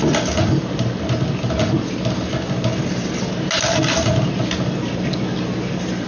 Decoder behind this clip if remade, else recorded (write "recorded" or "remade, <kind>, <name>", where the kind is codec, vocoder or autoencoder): recorded